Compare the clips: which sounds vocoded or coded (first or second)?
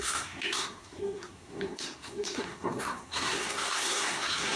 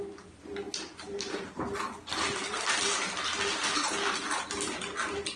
first